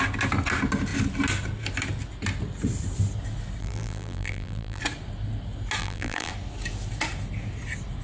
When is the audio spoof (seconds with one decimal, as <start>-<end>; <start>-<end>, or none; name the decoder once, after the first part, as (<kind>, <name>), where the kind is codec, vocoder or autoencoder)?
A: 3.6-4.8 (vocoder, BigVGAN v2); 5.8-6.3

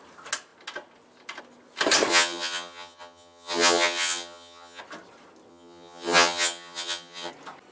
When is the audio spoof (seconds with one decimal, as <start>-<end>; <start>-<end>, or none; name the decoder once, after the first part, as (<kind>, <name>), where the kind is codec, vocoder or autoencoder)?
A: 2.1-4.8 (vocoder, HiFi-GAN); 5.5-7.3

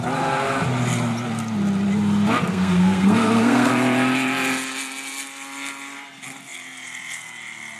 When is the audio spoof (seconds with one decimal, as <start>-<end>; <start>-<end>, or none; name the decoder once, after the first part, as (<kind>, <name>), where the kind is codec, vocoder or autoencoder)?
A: 2.5-3.7 (codec, SNAC)